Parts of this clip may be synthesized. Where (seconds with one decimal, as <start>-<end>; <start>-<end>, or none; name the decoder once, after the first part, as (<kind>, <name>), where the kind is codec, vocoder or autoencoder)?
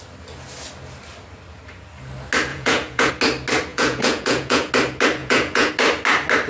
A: 2.5-3.1 (vocoder, Vocos); 3.7-4.7; 5.2-5.7